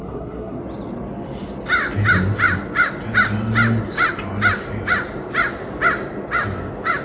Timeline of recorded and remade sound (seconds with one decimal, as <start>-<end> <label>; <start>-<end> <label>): 0.0-0.6 remade; 0.6-7.0 recorded